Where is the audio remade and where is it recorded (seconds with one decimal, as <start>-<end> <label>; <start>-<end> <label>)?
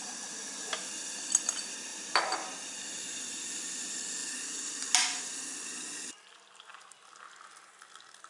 0.0-1.9 recorded; 1.9-2.9 remade; 2.9-8.3 recorded